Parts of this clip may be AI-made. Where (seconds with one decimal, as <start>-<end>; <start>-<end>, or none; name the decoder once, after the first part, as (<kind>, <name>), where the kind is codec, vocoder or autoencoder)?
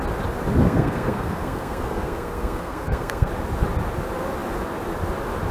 0.6-3.3 (codec, SNAC)